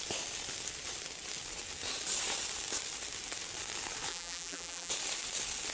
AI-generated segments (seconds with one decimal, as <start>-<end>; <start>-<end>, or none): 4.1-4.9